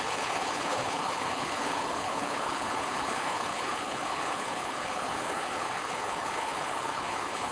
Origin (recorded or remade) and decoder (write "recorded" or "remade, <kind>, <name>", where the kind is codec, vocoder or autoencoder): remade, codec, HILCodec